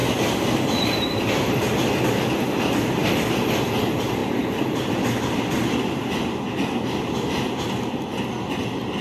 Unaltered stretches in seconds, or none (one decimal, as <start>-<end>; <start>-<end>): 0.0-9.0

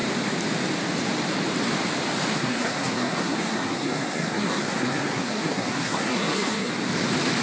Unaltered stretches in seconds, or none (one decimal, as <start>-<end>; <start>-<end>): 0.0-2.3; 6.7-7.4

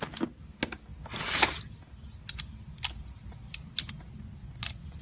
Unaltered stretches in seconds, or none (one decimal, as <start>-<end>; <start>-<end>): 0.0-4.4

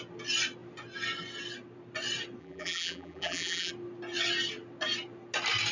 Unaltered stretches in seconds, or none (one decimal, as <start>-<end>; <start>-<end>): 0.0-2.4; 3.7-5.7

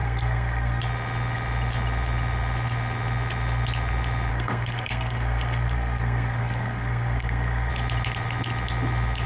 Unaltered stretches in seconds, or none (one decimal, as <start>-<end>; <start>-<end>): 0.8-4.3; 7.7-9.3

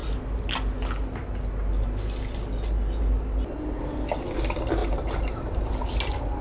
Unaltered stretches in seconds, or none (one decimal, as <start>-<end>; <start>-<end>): 0.0-4.8; 5.7-6.4

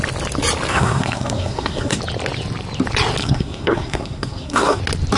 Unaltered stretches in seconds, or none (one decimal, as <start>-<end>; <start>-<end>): 0.0-0.7; 2.0-3.2; 4.8-5.2

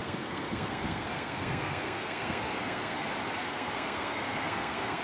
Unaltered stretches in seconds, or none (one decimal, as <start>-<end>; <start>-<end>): 3.0-3.4